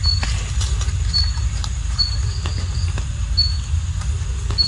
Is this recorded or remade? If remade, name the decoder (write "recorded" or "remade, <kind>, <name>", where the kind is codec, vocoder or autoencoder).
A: recorded